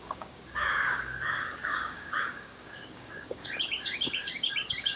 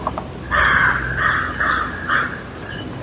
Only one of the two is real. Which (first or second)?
second